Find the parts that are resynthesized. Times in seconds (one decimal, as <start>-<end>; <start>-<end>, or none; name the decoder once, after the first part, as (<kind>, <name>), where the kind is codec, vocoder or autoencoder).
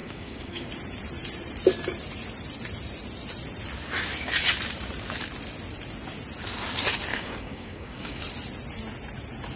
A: 0.0-0.7 (codec, DAC); 7.1-8.2